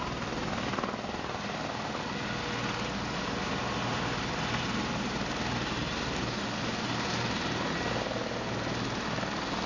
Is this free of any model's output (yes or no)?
yes